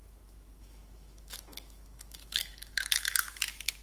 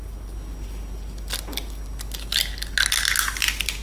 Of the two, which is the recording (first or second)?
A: second